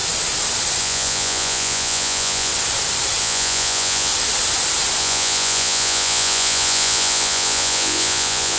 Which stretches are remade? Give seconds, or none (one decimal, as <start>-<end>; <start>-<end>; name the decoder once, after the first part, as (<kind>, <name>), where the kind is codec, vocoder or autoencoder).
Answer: 0.8-2.5 (vocoder, Vocos); 3.2-4.1; 5.0-8.6